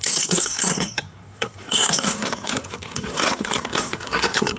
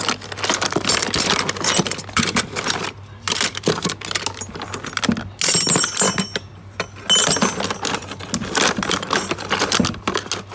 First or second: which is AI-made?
first